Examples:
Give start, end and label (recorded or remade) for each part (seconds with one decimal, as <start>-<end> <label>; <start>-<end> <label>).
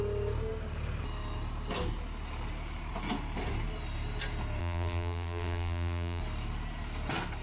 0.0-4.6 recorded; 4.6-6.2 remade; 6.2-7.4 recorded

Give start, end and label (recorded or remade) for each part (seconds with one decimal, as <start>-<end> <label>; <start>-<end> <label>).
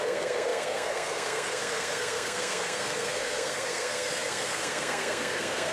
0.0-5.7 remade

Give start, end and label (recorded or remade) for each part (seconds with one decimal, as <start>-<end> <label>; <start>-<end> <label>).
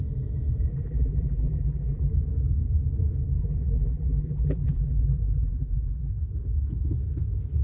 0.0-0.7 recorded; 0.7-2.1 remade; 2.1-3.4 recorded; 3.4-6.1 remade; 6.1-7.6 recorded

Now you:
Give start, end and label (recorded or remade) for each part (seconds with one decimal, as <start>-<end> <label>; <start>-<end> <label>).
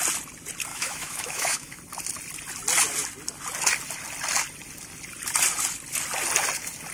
0.0-0.7 recorded; 0.7-1.8 remade; 1.8-6.9 recorded